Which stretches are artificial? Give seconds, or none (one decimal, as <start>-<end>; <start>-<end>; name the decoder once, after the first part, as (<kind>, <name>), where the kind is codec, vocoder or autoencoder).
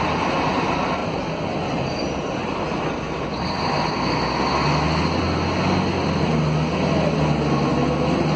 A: none